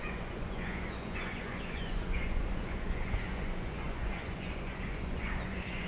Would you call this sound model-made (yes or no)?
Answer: yes